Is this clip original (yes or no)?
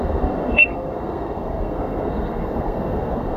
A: no